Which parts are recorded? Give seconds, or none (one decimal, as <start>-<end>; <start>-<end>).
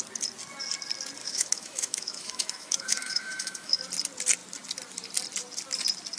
0.0-1.2; 3.8-6.2